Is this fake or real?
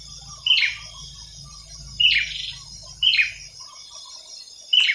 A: real